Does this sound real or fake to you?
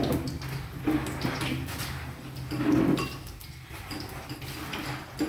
real